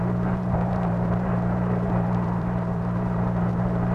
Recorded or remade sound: remade